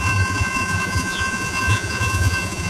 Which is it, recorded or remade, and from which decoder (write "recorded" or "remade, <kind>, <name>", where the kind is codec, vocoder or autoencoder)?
remade, vocoder, Vocos